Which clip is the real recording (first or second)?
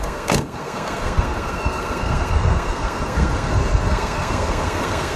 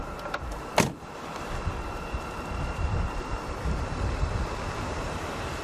second